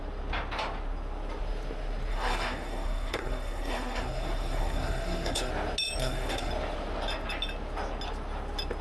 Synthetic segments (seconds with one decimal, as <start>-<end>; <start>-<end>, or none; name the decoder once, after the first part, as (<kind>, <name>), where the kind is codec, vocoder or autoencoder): 2.1-5.5 (codec, SNAC); 6.0-6.5

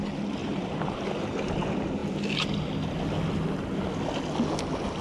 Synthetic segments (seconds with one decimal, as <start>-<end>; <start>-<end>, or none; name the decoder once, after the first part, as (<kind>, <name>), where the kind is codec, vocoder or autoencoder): 0.4-1.5 (vocoder, BigVGAN v2)

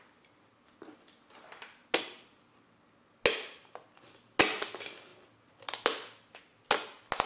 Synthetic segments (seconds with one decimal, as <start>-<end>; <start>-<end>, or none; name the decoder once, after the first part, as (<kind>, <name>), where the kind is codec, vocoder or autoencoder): none

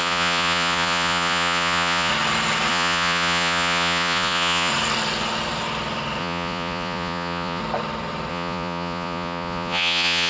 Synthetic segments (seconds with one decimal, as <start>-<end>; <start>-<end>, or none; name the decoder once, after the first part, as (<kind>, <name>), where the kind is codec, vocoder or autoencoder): 0.0-2.1 (vocoder, Vocos); 2.7-4.7; 6.2-7.6; 8.3-10.3

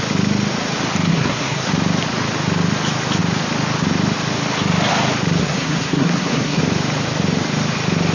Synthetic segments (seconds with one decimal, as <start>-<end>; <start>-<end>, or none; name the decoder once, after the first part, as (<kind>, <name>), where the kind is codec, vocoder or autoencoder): 1.1-1.7 (codec, SNAC); 5.4-6.6

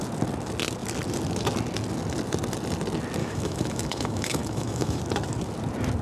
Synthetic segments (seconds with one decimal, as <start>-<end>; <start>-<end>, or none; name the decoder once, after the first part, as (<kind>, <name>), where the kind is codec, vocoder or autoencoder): 3.2-5.0 (autoencoder, DAC-VAE)

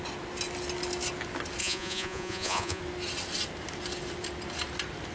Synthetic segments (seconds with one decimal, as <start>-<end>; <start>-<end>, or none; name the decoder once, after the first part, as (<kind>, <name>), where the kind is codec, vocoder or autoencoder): 1.6-2.8 (vocoder, Vocos)

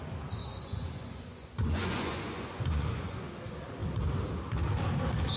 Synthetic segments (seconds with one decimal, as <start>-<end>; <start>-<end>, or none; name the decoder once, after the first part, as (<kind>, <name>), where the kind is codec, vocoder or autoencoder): 0.4-3.3 (vocoder, Vocos)